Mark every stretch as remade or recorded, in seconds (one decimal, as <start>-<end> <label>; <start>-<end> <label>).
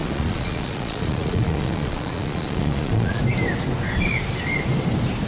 0.0-3.2 remade; 3.2-5.3 recorded